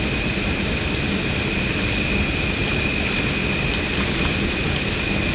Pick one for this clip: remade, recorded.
recorded